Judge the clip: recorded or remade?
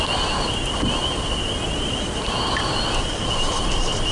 recorded